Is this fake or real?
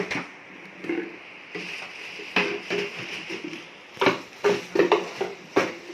real